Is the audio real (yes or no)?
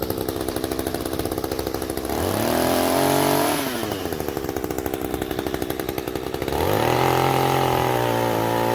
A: yes